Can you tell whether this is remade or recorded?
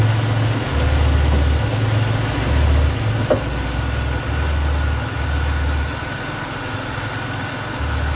recorded